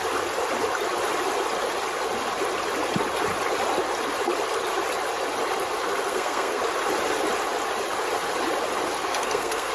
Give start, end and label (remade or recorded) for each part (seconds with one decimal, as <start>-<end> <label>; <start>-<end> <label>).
0.0-6.1 recorded; 6.1-6.6 remade; 6.6-9.1 recorded; 9.1-9.7 remade

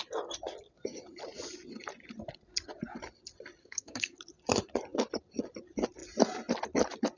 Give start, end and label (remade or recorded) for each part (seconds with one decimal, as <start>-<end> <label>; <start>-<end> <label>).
0.0-3.6 recorded; 3.6-4.2 remade; 4.2-7.2 recorded